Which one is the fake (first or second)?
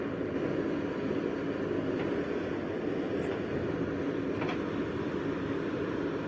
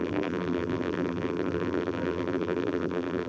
second